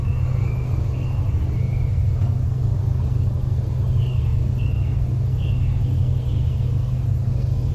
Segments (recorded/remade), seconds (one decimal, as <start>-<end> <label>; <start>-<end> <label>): 0.0-7.7 remade